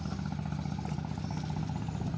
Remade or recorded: recorded